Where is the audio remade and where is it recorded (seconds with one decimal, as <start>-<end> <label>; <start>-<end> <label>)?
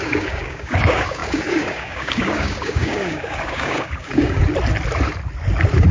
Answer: 0.0-4.4 remade; 4.4-5.9 recorded